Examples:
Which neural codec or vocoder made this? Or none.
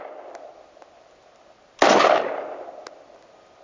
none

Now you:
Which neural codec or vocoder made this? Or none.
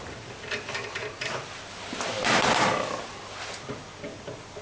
none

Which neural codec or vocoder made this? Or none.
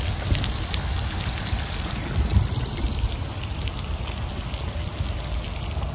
none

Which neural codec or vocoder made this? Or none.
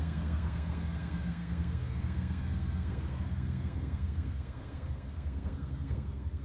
codec, SNAC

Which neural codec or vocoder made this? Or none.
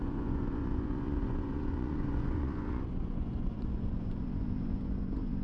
vocoder, Vocos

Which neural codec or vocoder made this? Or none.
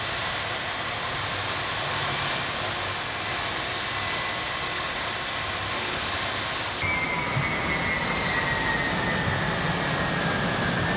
none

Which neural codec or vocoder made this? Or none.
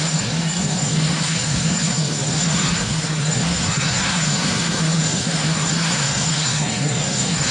codec, SNAC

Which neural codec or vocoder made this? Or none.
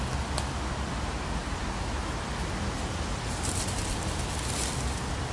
none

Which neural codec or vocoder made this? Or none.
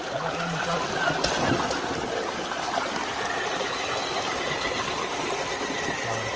none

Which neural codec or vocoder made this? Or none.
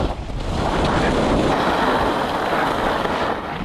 none